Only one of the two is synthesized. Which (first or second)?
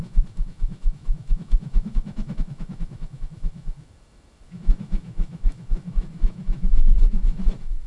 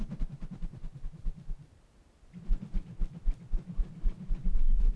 first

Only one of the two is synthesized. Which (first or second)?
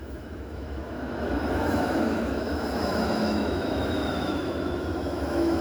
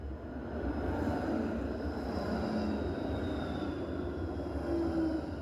first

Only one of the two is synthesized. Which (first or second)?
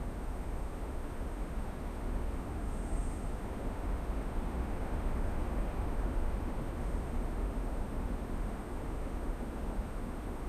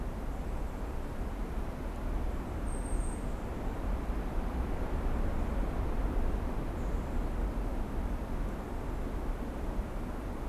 first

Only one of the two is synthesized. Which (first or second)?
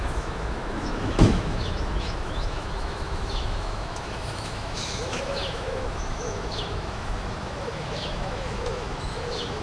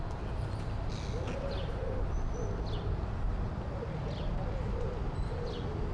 first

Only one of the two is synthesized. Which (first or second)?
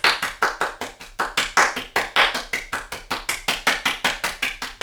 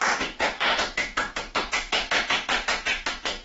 second